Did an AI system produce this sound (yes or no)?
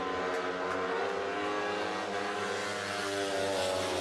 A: no